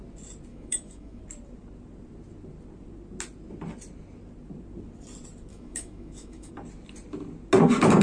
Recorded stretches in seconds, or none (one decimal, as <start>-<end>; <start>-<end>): 0.0-0.5; 1.2-5.5; 6.5-8.0